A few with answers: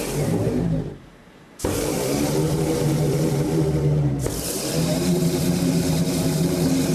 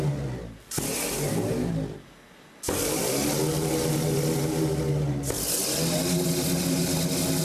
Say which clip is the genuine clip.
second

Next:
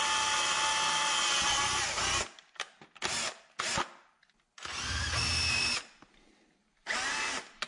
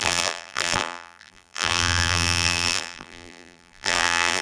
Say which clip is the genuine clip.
first